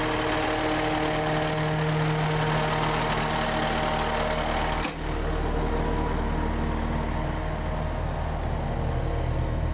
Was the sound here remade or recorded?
recorded